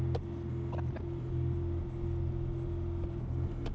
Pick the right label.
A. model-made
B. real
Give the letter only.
B